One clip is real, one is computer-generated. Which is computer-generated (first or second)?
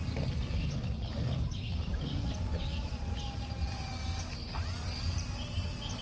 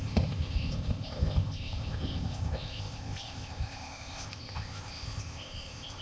second